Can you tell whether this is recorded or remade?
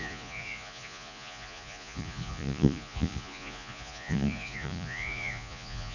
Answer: remade